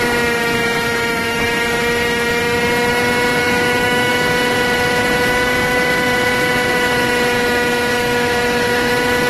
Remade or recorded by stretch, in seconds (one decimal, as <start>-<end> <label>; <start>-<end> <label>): 0.0-0.4 recorded; 0.4-2.4 remade; 2.4-3.4 recorded; 3.4-4.1 remade; 4.1-7.9 recorded; 7.9-8.9 remade; 8.9-9.3 recorded